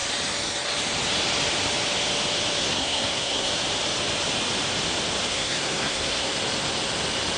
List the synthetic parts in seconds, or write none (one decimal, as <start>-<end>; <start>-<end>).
2.6-3.5; 5.3-6.3